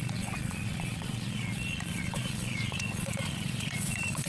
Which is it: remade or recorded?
remade